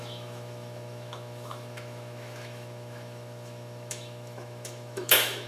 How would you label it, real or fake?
fake